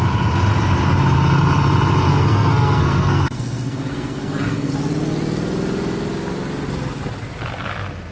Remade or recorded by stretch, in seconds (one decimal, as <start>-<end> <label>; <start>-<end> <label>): 0.0-2.1 recorded; 2.1-4.7 remade; 4.7-8.1 recorded